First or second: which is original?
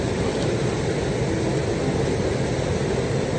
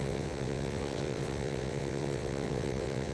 first